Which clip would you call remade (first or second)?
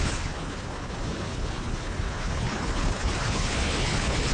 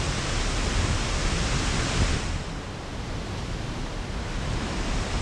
first